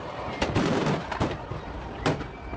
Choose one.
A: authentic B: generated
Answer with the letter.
B